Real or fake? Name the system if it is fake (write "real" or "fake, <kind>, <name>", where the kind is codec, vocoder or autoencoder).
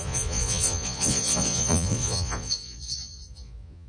fake, vocoder, Vocos